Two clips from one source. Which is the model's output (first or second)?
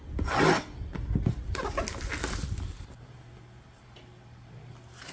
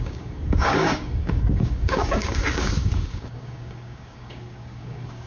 second